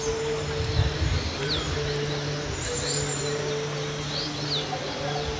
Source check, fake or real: real